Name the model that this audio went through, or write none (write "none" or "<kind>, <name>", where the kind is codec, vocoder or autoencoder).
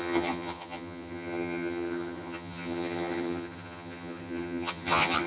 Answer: vocoder, HiFi-GAN